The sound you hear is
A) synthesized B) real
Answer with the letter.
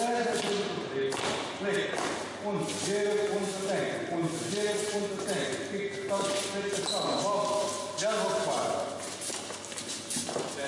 B